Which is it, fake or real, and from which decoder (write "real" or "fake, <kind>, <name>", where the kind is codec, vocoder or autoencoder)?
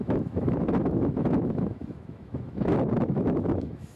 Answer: fake, autoencoder, DAC-VAE